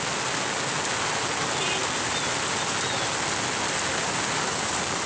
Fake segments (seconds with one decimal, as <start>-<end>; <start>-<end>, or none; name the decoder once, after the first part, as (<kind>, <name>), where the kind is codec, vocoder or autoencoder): none